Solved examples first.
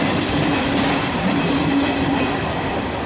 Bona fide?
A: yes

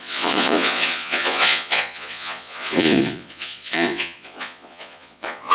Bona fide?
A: no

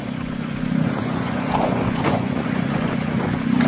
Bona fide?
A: no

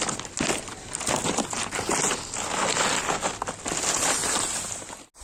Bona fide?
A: yes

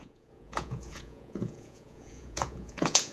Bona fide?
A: no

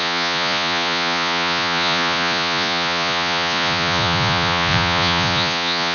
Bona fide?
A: no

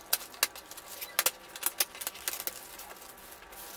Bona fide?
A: yes